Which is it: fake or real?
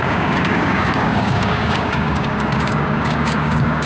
fake